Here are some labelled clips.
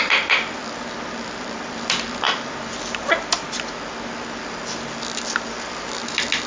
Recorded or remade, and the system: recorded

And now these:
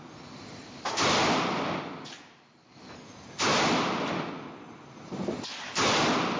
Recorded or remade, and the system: recorded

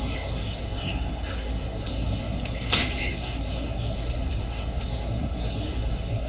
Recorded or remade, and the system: remade, codec, SNAC